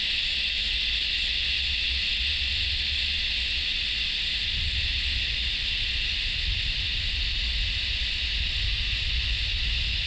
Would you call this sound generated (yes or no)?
no